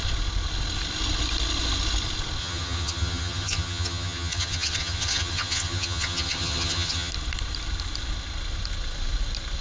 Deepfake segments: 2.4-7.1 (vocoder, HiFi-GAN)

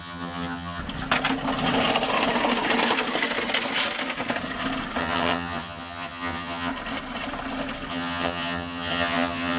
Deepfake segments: 0.0-0.8 (vocoder, HiFi-GAN); 5.0-6.7; 7.9-9.6

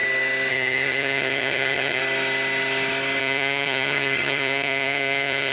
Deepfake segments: 0.5-2.0 (vocoder, HiFi-GAN); 3.2-5.5

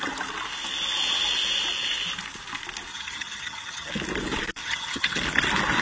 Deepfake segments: 2.9-3.9 (vocoder, HiFi-GAN); 4.6-5.2

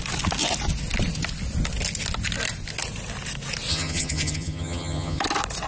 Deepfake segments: 3.7-5.2 (vocoder, HiFi-GAN)

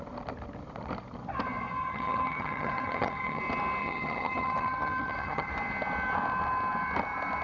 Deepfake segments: 1.8-3.4 (vocoder, HiFi-GAN); 3.8-5.5